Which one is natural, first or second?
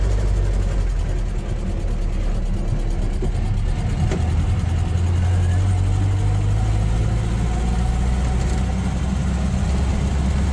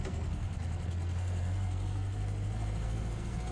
first